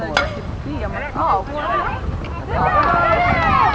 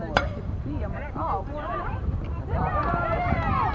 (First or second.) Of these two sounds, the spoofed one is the second